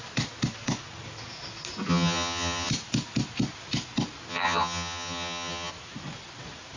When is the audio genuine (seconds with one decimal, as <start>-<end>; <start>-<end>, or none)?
0.0-1.9; 2.7-4.3; 5.7-6.8